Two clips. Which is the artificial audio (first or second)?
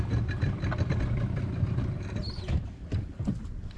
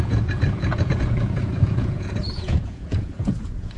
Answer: second